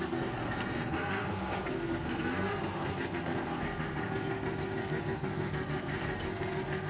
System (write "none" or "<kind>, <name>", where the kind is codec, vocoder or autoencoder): codec, SNAC